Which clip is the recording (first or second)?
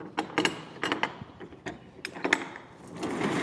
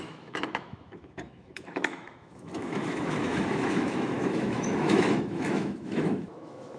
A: first